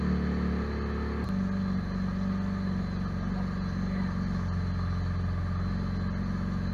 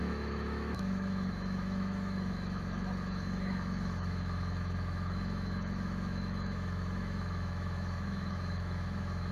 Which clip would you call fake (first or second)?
second